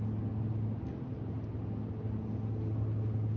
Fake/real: real